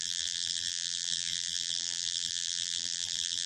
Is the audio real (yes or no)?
no